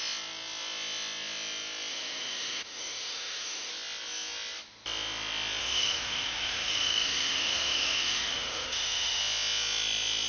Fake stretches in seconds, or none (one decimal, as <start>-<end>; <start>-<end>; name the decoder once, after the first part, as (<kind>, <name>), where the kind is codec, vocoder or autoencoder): 1.9-3.7 (autoencoder, DAC-VAE); 5.6-9.2